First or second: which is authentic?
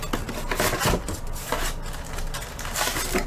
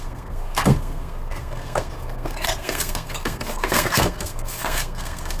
first